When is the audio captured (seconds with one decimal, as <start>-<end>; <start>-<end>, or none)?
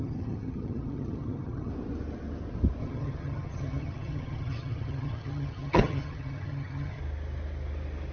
1.7-2.8; 7.0-8.1